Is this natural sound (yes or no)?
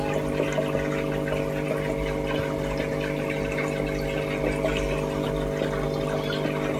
yes